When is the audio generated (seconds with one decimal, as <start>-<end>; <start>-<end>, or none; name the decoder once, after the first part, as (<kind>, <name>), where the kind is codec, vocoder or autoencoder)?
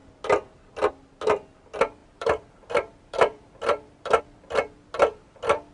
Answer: 2.0-4.2 (vocoder, BigVGAN v2)